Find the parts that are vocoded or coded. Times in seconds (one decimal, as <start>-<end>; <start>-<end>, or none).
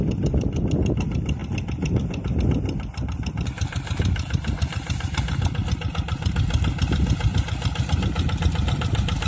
1.4-2.4